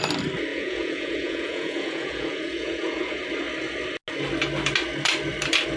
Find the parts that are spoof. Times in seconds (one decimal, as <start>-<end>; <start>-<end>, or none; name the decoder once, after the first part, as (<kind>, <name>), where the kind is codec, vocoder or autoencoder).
0.5-3.2 (vocoder, Vocos)